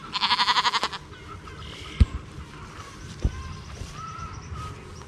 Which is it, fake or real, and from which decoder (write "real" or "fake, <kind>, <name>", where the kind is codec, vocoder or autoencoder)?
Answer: real